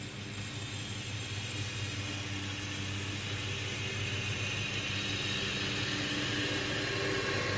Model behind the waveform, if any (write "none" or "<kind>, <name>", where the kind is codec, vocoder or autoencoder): none